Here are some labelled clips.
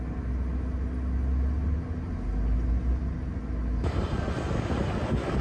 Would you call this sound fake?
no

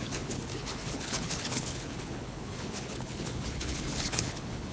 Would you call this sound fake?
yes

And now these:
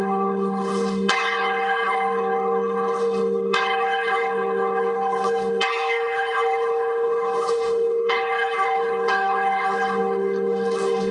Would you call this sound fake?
yes